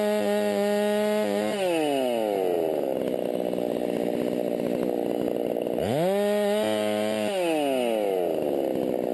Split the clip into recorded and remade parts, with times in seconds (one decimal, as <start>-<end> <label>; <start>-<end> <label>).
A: 0.0-9.1 recorded